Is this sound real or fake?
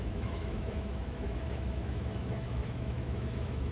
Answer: fake